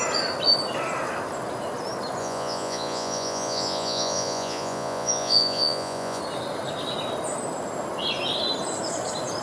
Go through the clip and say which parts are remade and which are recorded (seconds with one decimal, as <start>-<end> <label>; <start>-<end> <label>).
0.0-2.2 recorded; 2.2-6.2 remade; 6.2-9.4 recorded